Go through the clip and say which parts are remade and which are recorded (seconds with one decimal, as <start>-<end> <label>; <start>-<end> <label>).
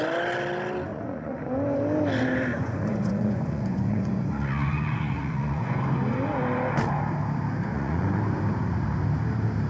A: 0.0-0.9 recorded; 0.9-1.4 remade; 1.4-2.5 recorded; 2.5-5.8 remade; 5.8-7.7 recorded; 7.7-8.2 remade; 8.2-9.7 recorded